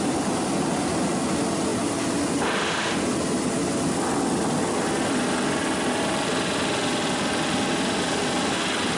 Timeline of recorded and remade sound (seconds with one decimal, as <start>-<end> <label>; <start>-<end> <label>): 0.0-9.0 recorded